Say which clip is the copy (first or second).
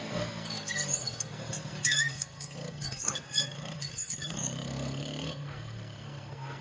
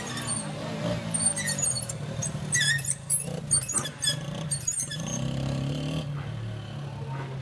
first